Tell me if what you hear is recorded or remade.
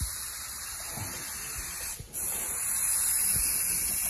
recorded